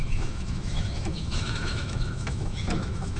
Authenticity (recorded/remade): remade